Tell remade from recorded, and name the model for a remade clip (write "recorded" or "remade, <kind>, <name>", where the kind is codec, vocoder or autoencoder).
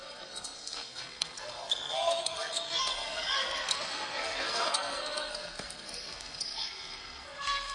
remade, codec, SNAC